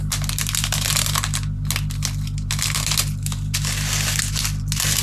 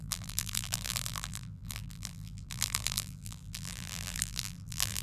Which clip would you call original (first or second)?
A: first